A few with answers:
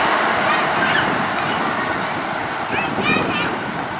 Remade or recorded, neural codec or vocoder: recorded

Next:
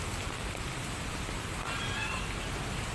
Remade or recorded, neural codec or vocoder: recorded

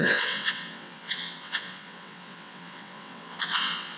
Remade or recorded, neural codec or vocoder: remade, vocoder, WaveNeXt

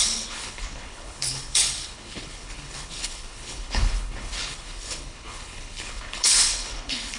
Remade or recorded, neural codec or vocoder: remade, codec, HILCodec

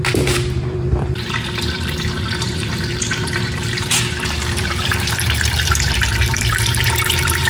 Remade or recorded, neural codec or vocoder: remade, vocoder, BigVGAN v2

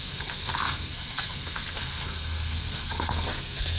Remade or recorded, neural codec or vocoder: remade, codec, SNAC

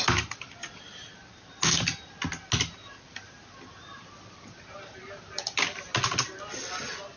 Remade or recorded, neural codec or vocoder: recorded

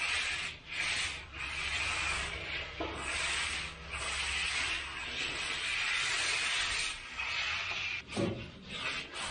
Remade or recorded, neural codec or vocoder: recorded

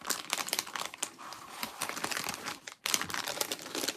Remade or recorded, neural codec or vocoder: remade, vocoder, BigVGAN v2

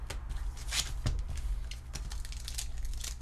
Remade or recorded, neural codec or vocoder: recorded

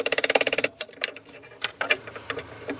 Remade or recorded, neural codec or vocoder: remade, vocoder, BigVGAN v2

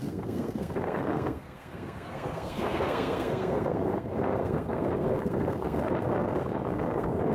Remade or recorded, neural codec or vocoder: remade, codec, SNAC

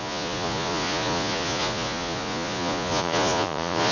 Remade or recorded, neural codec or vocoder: remade, vocoder, Vocos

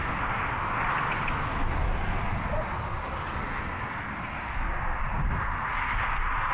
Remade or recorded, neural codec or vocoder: recorded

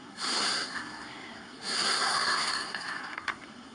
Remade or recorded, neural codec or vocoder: remade, codec, SNAC